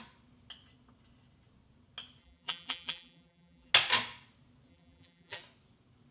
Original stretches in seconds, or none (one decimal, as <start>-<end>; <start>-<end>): 0.0-2.2; 3.7-4.7; 5.4-6.1